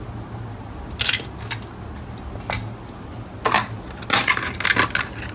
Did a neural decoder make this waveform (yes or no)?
no